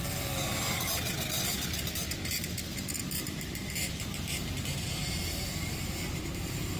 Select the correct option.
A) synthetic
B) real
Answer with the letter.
A